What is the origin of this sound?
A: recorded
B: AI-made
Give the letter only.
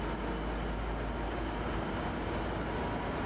A